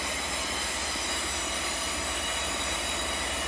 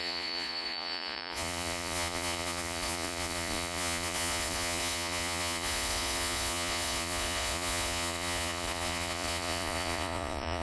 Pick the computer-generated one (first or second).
second